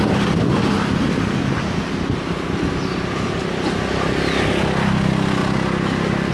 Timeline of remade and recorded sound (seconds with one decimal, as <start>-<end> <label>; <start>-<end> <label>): 0.0-6.3 recorded